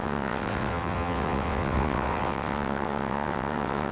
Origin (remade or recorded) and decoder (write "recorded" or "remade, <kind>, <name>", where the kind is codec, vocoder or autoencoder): remade, vocoder, WaveNeXt